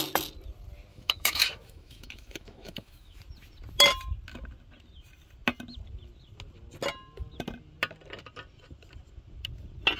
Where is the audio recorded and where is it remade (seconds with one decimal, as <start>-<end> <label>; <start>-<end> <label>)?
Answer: 0.0-0.9 recorded; 0.9-3.2 remade; 3.2-10.0 recorded